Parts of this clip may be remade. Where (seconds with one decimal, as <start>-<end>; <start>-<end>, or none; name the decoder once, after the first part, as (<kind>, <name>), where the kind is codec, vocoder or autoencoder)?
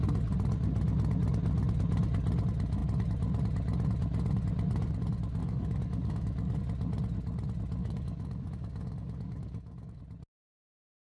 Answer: 5.4-6.6 (codec, DAC); 7.8-10.0